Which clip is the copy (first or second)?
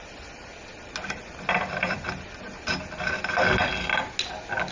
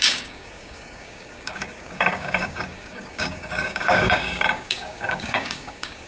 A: second